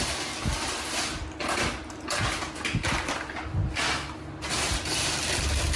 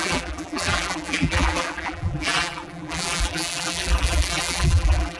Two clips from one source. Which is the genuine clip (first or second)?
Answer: first